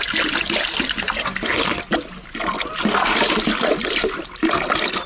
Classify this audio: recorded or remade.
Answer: recorded